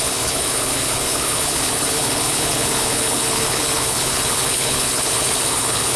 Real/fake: fake